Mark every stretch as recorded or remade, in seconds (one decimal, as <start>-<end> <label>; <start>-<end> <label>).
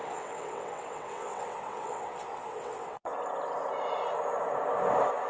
0.0-3.2 remade; 3.2-5.3 recorded